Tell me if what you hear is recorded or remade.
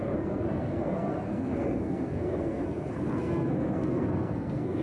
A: remade